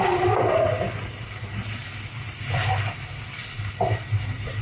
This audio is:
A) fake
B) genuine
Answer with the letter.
B